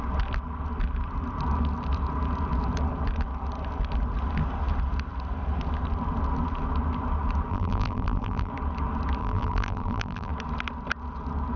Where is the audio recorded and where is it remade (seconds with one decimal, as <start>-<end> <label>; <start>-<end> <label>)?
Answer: 0.0-7.5 recorded; 7.5-8.5 remade; 8.5-9.2 recorded; 9.2-10.3 remade; 10.3-11.6 recorded